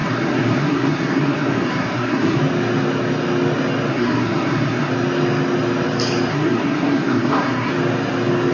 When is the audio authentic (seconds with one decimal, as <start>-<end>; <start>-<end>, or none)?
2.4-3.9; 4.9-6.3; 7.7-8.5